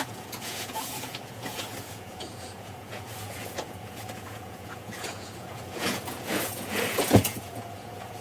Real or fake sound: fake